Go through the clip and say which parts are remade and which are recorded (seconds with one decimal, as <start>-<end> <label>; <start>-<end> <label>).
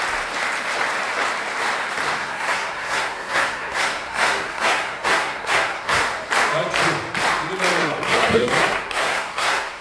0.0-2.2 recorded; 2.2-6.0 remade; 6.0-7.8 recorded; 7.8-9.8 remade